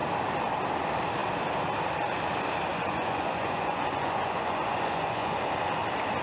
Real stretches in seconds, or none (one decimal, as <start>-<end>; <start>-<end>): 0.0-2.7; 5.4-6.2